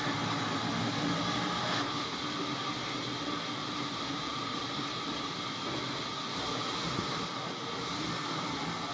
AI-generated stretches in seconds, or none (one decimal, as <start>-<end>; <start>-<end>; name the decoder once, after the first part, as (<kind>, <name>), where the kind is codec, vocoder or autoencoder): 3.6-4.6 (vocoder, BigVGAN v2)